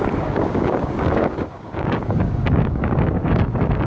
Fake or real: fake